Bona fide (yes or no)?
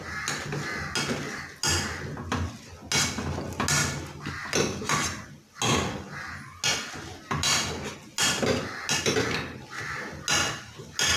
yes